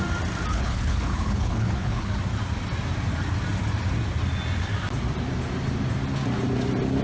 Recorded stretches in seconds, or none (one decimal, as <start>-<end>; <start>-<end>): 0.0-0.5; 2.1-7.0